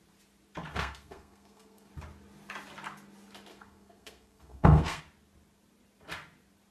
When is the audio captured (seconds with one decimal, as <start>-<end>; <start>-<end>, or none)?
0.0-0.7; 1.9-3.5; 5.0-6.7